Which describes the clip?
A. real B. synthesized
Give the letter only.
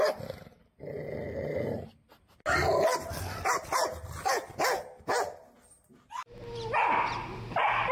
A